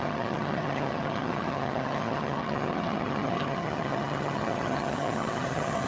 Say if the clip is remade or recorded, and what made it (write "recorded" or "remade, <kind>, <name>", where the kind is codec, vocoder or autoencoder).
remade, vocoder, HiFi-GAN